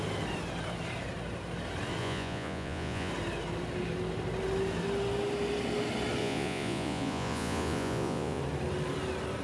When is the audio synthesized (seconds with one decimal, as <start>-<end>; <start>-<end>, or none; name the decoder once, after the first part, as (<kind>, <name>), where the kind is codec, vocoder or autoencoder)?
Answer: 2.0-3.1 (vocoder, Vocos); 6.2-8.4